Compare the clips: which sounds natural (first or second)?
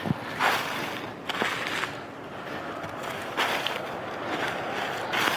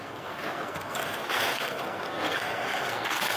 first